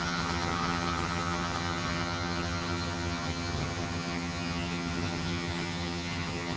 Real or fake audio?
fake